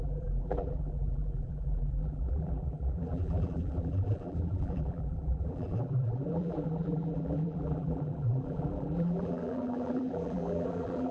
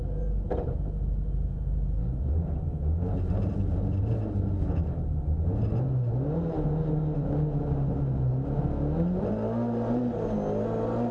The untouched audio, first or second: second